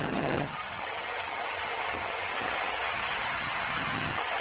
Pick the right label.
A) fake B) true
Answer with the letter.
A